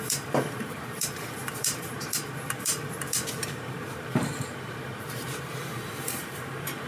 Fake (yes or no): yes